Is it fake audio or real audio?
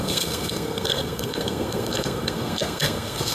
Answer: fake